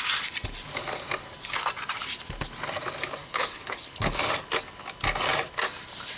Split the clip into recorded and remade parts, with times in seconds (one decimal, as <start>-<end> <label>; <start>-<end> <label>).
0.0-3.2 recorded; 3.2-4.2 remade; 4.2-6.2 recorded